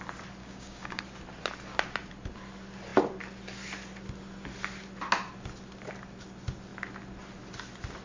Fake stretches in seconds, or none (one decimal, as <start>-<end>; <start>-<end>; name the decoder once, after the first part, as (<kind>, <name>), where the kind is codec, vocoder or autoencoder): 0.4-1.0 (codec, DAC)